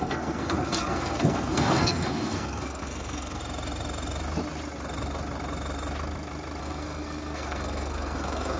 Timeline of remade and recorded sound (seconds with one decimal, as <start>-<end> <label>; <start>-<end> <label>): 0.0-3.4 remade; 3.4-6.6 recorded; 6.6-8.6 remade